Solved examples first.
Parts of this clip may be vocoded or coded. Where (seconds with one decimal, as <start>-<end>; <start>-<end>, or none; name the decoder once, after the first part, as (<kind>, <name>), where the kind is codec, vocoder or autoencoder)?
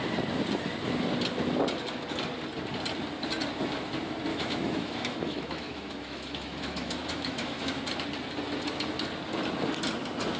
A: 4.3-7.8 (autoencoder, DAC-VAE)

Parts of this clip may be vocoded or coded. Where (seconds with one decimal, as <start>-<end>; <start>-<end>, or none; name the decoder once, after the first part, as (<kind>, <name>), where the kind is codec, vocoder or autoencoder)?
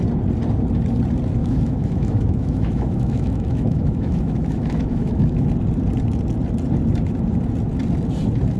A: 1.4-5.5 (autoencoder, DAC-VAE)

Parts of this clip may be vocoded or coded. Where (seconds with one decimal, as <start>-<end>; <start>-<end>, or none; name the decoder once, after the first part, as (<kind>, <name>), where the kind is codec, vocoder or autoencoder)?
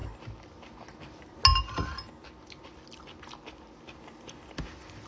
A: none